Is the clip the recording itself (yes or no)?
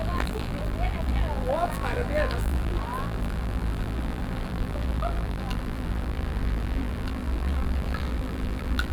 no